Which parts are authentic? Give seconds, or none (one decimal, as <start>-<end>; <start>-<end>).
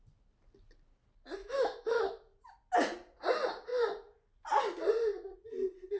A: 0.0-1.4; 2.0-6.0